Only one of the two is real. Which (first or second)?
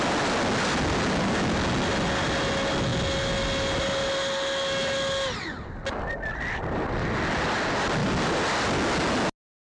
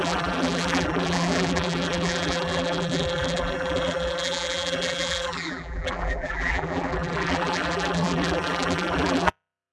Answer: first